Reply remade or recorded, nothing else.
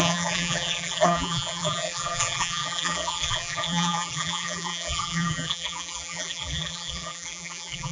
remade